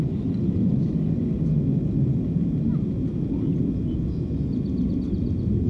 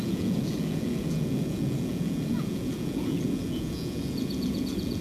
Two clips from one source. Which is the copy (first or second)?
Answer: second